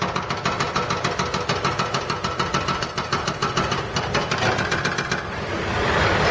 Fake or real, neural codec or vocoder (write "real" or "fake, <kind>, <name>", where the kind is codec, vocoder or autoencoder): real